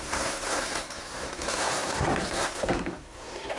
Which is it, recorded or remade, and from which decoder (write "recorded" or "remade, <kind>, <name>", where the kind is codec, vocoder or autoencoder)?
remade, codec, SNAC